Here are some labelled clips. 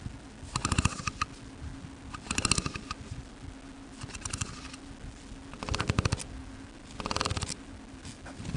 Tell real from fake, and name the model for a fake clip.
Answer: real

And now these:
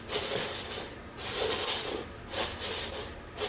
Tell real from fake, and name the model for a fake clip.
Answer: real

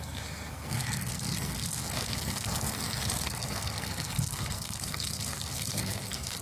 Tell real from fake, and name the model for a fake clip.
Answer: fake, codec, SNAC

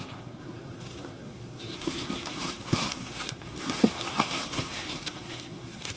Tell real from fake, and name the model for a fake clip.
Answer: fake, codec, SNAC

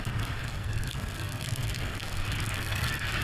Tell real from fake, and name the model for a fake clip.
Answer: fake, codec, SNAC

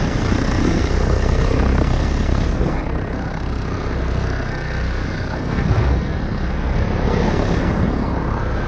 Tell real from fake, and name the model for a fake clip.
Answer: fake, codec, SNAC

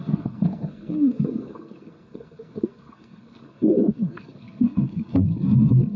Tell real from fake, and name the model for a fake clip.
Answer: fake, codec, SNAC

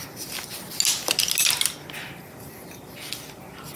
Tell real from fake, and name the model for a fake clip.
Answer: real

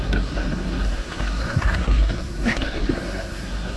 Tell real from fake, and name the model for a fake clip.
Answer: fake, codec, SNAC